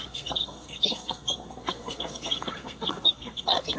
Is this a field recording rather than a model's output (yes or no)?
no